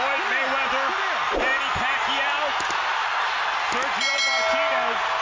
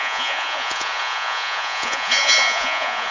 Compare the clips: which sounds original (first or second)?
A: first